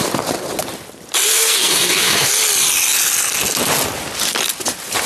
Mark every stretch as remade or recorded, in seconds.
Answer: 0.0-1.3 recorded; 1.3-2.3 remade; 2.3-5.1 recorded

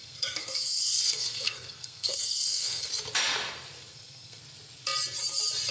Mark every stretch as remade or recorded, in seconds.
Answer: 0.0-2.9 remade; 2.9-3.9 recorded; 3.9-4.4 remade; 4.4-5.7 recorded

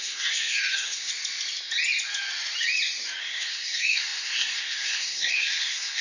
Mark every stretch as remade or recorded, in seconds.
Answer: 0.0-1.1 remade; 1.1-3.2 recorded; 3.2-6.0 remade

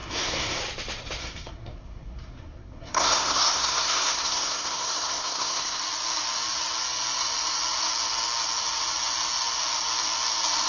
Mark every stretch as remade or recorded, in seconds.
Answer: 0.0-0.6 remade; 0.6-1.2 recorded; 1.2-5.8 remade; 5.8-10.7 recorded

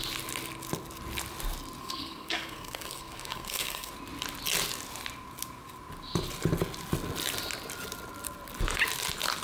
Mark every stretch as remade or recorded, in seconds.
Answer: 0.0-1.8 recorded; 1.8-3.9 remade; 3.9-9.4 recorded

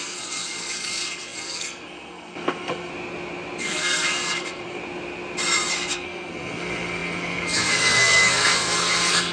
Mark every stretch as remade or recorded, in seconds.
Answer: 0.0-2.9 remade; 2.9-3.6 recorded; 3.6-4.8 remade; 4.8-5.7 recorded; 5.7-9.3 remade

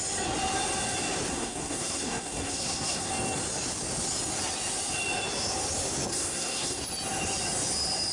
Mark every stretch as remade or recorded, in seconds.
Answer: 0.0-1.3 recorded; 1.3-3.1 remade; 3.1-6.1 recorded; 6.1-6.8 remade; 6.8-8.1 recorded

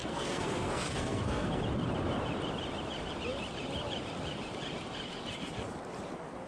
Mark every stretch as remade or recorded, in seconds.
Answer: 0.0-1.6 remade; 1.6-6.5 recorded